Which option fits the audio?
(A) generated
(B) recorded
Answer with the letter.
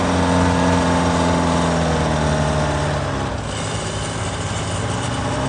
B